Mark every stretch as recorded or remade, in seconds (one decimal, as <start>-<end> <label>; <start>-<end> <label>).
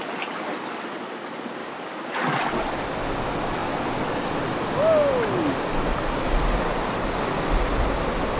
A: 0.0-1.6 recorded; 1.6-2.1 remade; 2.1-8.4 recorded